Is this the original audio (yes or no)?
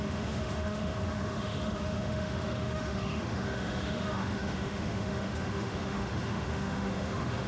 no